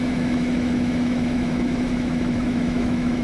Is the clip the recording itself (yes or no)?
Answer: no